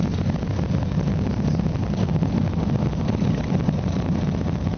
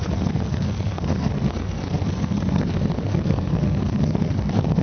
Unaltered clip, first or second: first